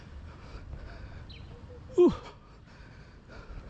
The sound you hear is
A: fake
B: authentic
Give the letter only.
A